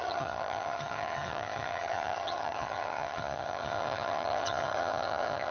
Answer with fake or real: fake